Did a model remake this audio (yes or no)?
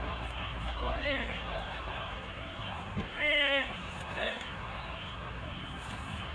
yes